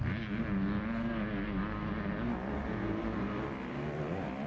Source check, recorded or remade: recorded